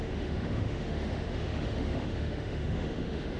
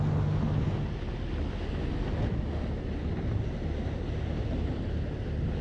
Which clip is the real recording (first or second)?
second